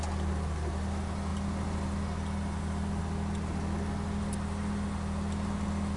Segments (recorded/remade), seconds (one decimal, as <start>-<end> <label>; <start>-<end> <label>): 0.0-6.0 recorded